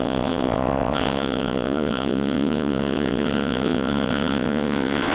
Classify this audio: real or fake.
fake